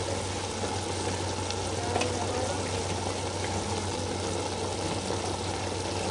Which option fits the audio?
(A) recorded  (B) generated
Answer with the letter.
A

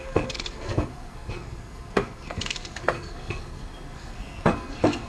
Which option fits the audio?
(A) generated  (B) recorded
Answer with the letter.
A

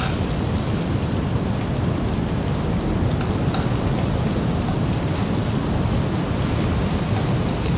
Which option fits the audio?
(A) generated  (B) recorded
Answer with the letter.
B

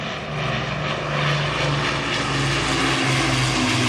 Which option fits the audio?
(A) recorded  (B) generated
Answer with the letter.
A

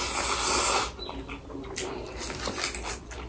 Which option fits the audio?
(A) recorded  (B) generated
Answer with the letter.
A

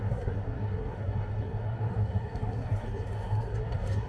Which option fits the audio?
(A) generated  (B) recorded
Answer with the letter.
A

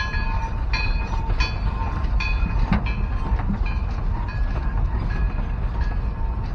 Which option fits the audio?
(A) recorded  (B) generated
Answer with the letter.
A